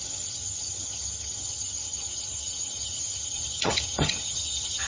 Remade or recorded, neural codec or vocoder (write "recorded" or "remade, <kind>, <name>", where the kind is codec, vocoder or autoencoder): remade, vocoder, HiFi-GAN